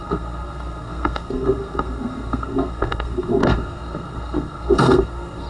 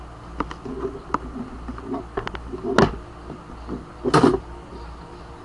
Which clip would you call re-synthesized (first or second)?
first